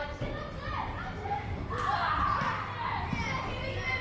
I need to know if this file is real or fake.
real